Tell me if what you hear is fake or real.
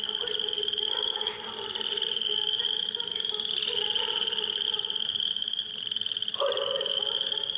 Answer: real